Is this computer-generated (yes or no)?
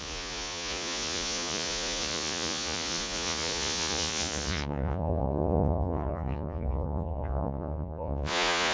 yes